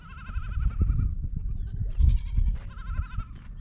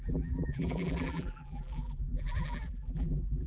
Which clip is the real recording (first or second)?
first